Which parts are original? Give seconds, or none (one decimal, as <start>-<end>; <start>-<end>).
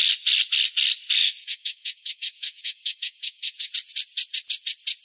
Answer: 0.0-1.2; 3.7-5.0